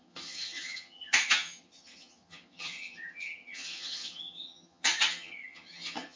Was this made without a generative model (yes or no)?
no